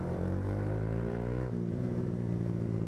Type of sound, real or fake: fake